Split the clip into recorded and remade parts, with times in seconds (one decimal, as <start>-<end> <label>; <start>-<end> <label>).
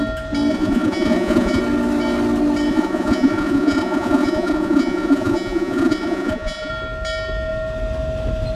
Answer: 0.0-0.5 recorded; 0.5-1.6 remade; 1.6-2.7 recorded; 2.7-6.7 remade; 6.7-8.5 recorded